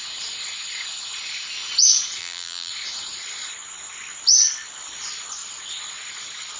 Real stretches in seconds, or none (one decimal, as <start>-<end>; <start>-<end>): 0.0-2.2; 2.7-6.6